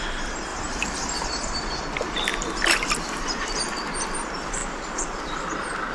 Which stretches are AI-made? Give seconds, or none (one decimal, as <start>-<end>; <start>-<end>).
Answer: 0.0-2.3; 3.2-5.9